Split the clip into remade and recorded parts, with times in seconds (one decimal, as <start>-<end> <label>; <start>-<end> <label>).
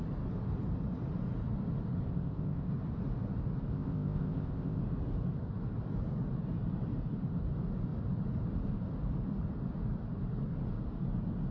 0.0-2.1 recorded; 2.1-2.7 remade; 2.7-3.7 recorded; 3.7-4.8 remade; 4.8-11.5 recorded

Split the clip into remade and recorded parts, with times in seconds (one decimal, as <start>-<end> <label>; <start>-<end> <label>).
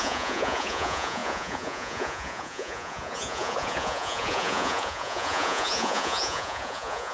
0.0-7.1 remade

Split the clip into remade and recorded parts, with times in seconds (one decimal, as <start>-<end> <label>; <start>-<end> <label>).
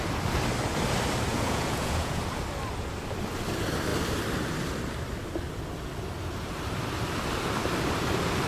0.0-1.3 recorded; 1.3-2.2 remade; 2.2-8.5 recorded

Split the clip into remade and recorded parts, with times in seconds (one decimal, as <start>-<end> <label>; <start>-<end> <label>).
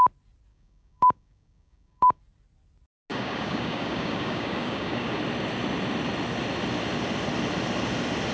0.0-0.5 recorded; 0.5-2.2 remade; 2.2-3.1 recorded; 3.1-5.2 remade; 5.2-8.3 recorded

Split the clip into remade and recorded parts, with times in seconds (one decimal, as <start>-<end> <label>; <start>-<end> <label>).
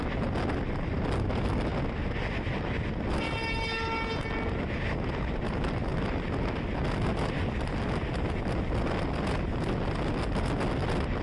0.0-11.2 recorded